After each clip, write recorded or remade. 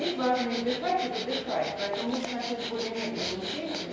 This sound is recorded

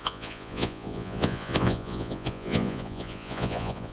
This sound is remade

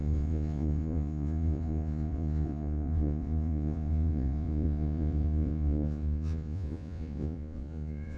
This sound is remade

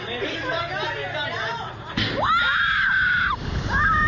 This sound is recorded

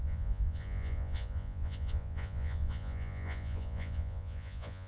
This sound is remade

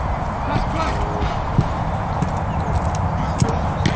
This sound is recorded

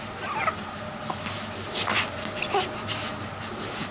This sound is recorded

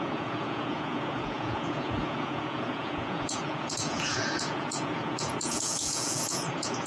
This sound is remade